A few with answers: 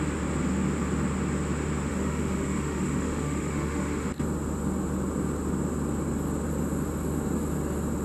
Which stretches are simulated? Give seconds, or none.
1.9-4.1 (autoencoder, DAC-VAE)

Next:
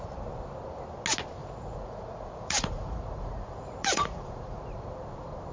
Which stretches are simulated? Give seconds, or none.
1.4-4.6 (vocoder, Vocos)

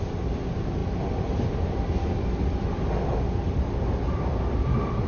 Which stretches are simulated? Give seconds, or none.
none